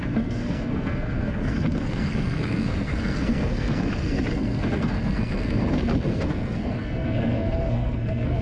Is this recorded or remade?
remade